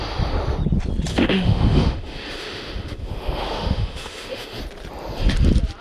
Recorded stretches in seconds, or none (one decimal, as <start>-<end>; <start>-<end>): 0.0-1.1; 4.6-5.8